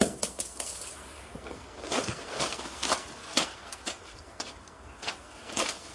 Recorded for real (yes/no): no